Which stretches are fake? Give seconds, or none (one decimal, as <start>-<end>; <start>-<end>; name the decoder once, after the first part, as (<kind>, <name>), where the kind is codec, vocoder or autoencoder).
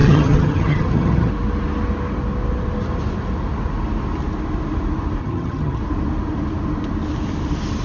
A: 0.0-1.3 (vocoder, HiFi-GAN); 5.2-5.8